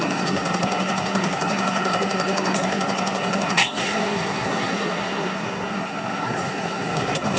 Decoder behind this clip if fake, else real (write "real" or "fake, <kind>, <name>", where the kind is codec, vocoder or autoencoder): fake, codec, SNAC